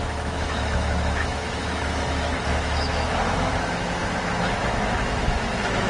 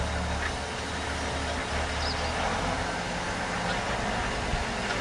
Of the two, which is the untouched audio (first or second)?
second